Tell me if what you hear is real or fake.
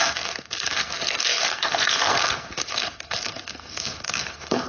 fake